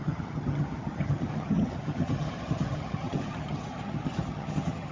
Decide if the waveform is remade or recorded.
remade